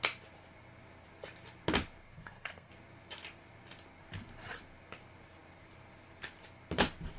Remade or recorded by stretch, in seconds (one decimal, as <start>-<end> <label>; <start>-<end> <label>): 0.0-2.0 recorded; 2.0-2.7 remade; 2.7-7.2 recorded

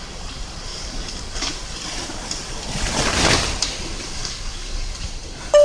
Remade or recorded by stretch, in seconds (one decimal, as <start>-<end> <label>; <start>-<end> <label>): 0.0-0.7 recorded; 0.7-1.5 remade; 1.5-4.2 recorded; 4.2-4.9 remade; 4.9-5.6 recorded

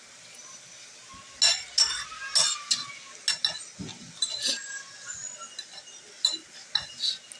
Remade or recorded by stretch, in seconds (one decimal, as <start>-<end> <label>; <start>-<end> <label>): 0.0-7.4 recorded

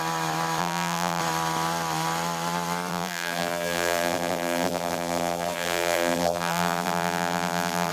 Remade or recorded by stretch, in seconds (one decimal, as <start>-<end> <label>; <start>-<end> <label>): 0.0-0.6 recorded; 0.6-1.2 remade; 1.2-2.9 recorded; 2.9-7.9 remade

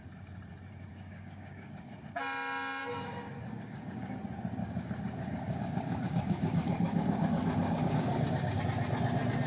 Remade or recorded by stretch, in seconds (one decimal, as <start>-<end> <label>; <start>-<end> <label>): 0.0-0.9 recorded; 0.9-1.8 remade; 1.8-2.8 recorded; 2.8-4.1 remade; 4.1-4.6 recorded; 4.6-8.6 remade; 8.6-9.5 recorded